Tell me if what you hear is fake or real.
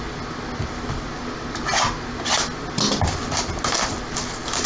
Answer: real